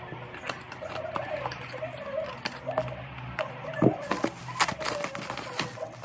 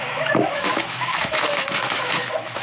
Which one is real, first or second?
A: first